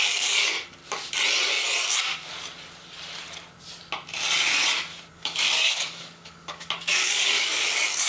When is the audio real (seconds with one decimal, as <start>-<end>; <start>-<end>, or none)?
0.8-5.1